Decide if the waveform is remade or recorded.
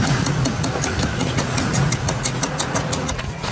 remade